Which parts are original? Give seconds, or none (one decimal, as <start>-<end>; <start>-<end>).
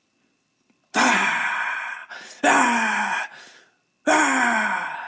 0.0-5.1